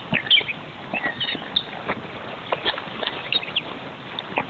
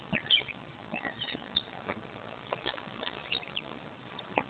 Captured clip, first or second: first